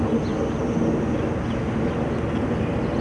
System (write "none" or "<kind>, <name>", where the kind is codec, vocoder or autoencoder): none